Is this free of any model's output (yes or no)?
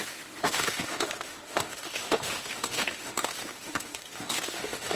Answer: no